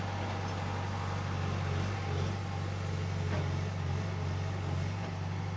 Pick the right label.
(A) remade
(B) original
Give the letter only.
B